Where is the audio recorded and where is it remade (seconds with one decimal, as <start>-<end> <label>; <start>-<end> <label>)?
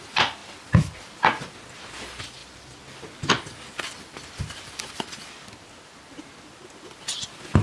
0.0-0.4 recorded; 0.4-1.0 remade; 1.0-2.4 recorded; 2.4-5.3 remade; 5.3-7.6 recorded